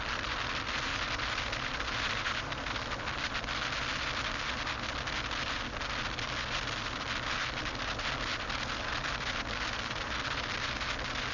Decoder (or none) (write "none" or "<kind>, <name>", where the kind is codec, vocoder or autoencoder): none